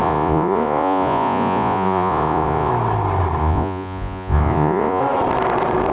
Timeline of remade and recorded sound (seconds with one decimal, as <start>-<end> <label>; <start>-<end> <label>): 0.0-2.7 remade; 2.7-3.4 recorded; 3.4-5.0 remade; 5.0-5.9 recorded